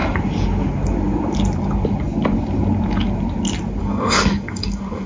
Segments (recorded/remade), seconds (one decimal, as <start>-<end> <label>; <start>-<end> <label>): 0.0-3.8 recorded; 3.8-5.1 remade